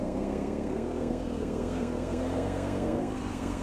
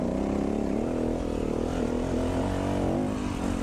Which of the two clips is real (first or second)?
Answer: second